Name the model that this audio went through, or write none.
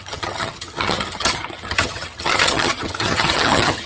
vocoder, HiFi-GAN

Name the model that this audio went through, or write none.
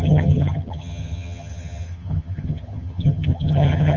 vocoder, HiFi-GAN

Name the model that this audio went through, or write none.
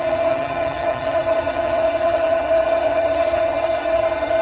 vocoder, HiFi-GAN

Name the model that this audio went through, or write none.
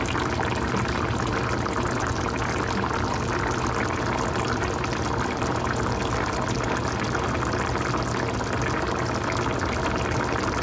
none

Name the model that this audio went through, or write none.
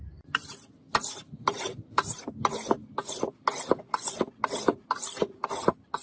none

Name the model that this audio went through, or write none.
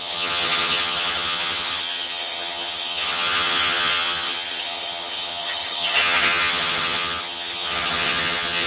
vocoder, HiFi-GAN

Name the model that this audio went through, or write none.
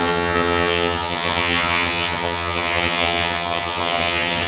vocoder, HiFi-GAN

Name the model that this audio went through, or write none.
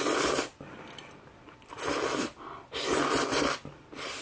none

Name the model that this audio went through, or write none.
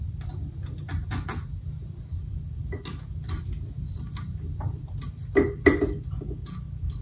none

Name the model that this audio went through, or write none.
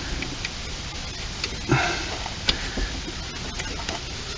none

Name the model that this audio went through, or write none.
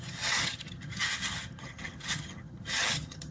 vocoder, HiFi-GAN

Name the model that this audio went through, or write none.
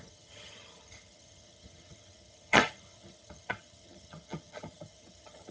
vocoder, HiFi-GAN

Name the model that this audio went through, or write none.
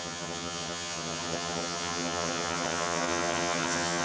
vocoder, HiFi-GAN